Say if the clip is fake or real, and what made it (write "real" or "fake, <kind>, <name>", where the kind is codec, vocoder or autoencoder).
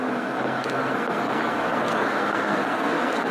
fake, codec, SNAC